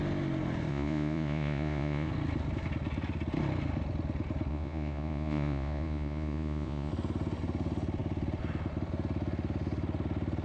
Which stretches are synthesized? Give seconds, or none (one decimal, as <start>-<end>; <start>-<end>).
0.7-2.1; 4.5-6.9